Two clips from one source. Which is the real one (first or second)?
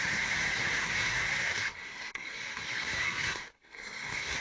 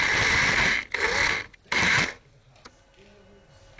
second